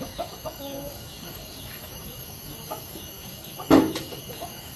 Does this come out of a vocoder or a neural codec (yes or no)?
yes